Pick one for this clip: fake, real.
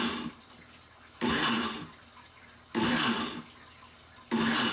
real